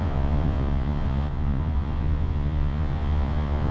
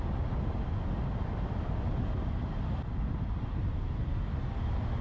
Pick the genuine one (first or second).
second